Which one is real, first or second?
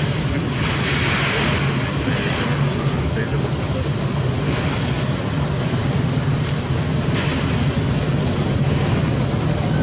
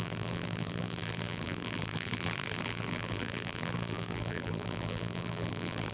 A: first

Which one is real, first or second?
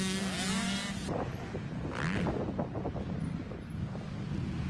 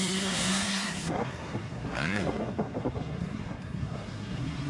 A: first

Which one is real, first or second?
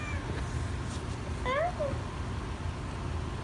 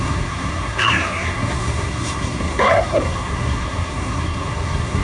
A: first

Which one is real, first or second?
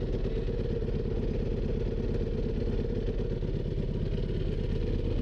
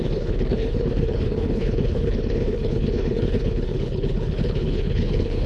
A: first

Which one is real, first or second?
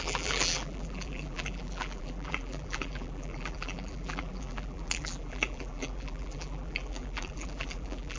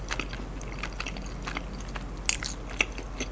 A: second